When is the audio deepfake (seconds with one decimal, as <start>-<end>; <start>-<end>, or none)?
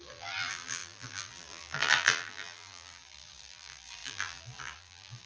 0.0-5.3